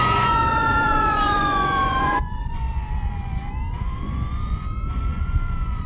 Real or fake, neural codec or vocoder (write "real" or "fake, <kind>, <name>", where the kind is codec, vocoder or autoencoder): fake, vocoder, Vocos